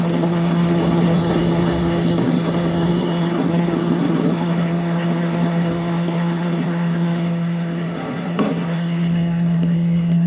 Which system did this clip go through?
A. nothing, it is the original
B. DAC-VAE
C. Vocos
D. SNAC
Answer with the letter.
D